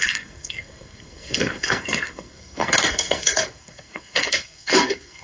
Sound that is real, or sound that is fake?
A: fake